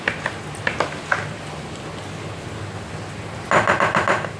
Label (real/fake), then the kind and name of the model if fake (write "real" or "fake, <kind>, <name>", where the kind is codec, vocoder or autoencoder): real